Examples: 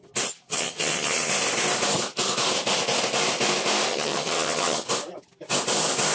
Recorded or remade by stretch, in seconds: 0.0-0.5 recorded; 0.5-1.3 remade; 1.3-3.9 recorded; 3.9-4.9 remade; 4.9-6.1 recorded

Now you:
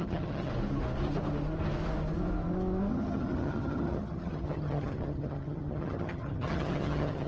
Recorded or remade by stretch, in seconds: 0.0-0.5 remade; 0.5-2.9 recorded; 2.9-7.3 remade

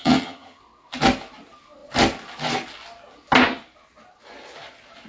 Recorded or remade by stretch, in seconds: 0.0-0.6 remade; 0.6-5.1 recorded

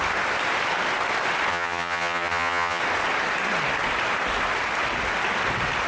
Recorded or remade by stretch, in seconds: 0.0-1.5 recorded; 1.5-2.8 remade; 2.8-5.9 recorded

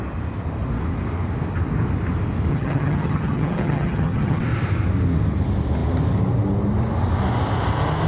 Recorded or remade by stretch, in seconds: 0.0-2.5 recorded; 2.5-4.4 remade; 4.4-8.1 recorded

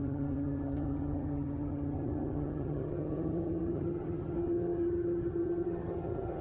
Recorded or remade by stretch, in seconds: 0.0-6.4 remade

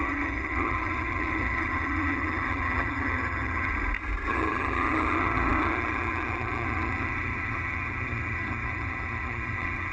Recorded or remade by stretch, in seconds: 0.0-3.7 remade; 3.7-4.3 recorded; 4.3-9.9 remade